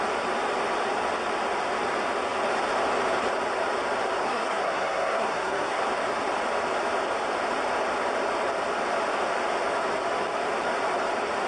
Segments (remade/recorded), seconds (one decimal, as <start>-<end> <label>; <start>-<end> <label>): 0.0-4.2 recorded; 4.2-5.8 remade; 5.8-11.5 recorded